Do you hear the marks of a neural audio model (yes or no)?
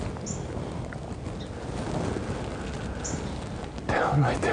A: no